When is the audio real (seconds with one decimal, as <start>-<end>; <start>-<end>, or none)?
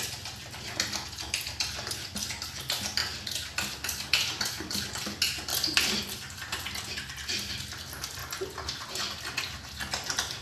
0.0-3.0; 4.9-10.4